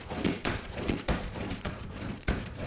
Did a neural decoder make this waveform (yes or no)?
yes